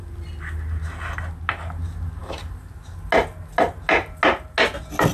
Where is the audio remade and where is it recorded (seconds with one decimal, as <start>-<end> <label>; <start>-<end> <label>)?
0.0-5.1 recorded

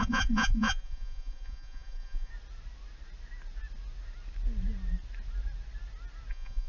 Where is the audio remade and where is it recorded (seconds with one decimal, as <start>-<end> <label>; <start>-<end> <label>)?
0.0-2.3 remade; 2.3-6.3 recorded; 6.3-6.7 remade

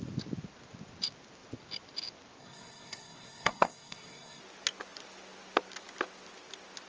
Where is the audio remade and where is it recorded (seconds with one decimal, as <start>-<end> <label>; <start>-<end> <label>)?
0.0-2.4 recorded; 2.4-4.4 remade; 4.4-6.9 recorded

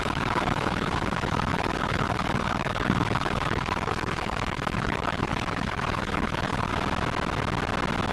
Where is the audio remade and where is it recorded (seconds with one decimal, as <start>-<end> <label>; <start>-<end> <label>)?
0.0-6.7 remade; 6.7-8.1 recorded

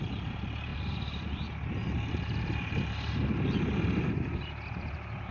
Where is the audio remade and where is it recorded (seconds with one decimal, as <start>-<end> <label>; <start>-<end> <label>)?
0.0-5.3 recorded

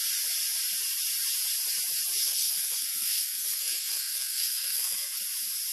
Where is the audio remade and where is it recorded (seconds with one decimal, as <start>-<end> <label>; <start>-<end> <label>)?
0.0-2.2 recorded; 2.2-5.2 remade; 5.2-5.7 recorded

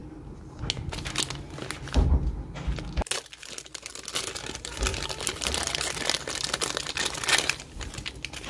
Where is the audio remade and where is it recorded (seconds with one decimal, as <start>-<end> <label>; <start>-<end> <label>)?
0.0-4.9 recorded; 4.9-8.1 remade; 8.1-8.5 recorded

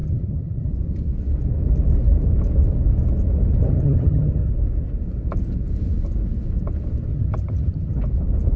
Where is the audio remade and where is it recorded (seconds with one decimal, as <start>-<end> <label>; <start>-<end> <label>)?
0.0-0.7 remade; 0.7-3.6 recorded; 3.6-4.5 remade; 4.5-7.1 recorded; 7.1-8.0 remade; 8.0-8.6 recorded